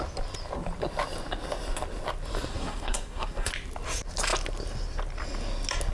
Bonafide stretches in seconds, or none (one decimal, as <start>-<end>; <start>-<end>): 0.0-2.5; 3.5-5.9